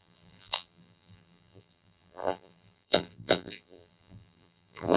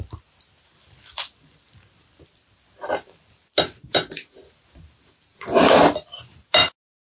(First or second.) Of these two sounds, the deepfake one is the first